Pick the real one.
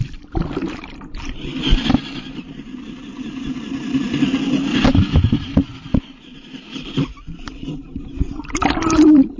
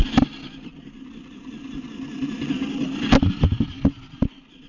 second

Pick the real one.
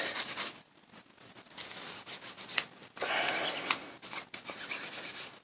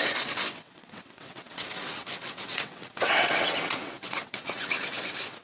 first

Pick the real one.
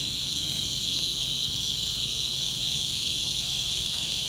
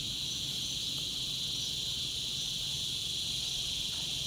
second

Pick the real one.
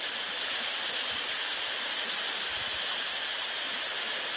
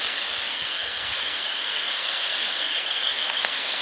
first